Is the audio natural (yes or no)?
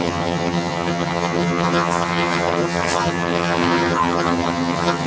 no